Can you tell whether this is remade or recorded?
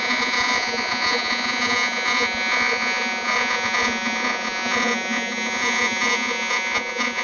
remade